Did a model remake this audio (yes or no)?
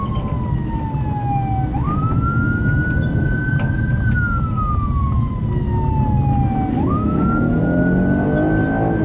no